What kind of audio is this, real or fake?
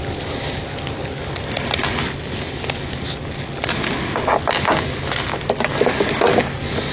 real